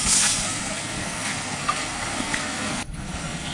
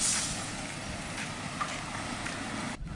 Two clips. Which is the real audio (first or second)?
second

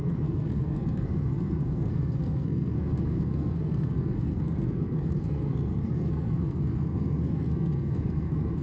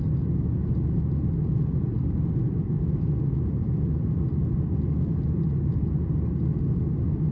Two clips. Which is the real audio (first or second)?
second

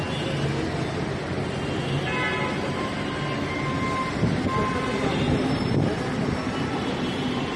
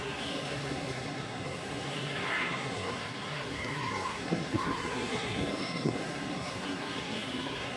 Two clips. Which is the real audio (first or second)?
first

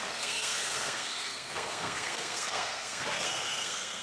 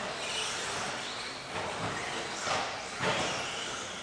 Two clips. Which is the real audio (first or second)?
second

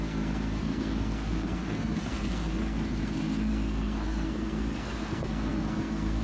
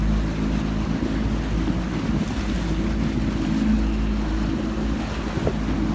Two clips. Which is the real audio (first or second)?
second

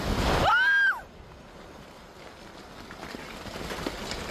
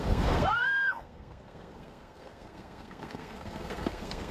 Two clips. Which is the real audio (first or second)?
first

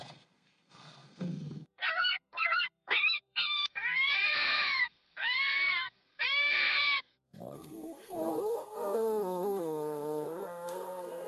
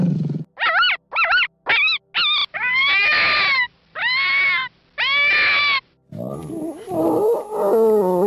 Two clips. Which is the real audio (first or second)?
second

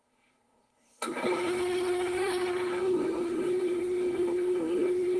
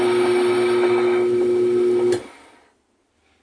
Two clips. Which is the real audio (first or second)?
second